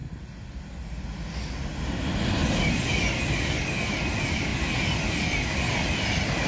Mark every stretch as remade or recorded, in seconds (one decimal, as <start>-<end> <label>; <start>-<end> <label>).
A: 0.0-6.5 recorded